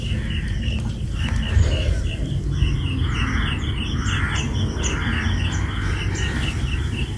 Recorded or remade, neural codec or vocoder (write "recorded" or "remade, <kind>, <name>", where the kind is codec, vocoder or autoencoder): recorded